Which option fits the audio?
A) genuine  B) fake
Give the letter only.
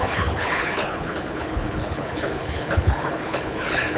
B